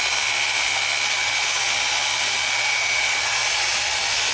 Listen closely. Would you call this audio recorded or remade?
recorded